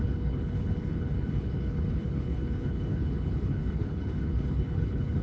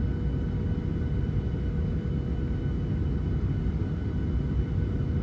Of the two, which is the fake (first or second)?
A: first